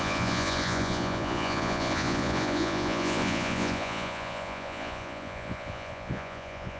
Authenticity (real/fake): fake